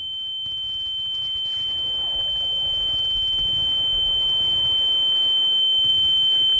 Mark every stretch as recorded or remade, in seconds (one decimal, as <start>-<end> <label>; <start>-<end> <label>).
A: 0.0-6.6 recorded